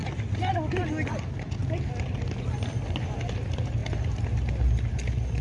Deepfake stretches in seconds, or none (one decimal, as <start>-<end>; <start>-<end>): none